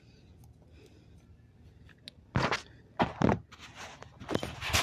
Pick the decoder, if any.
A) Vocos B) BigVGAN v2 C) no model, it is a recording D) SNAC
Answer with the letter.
C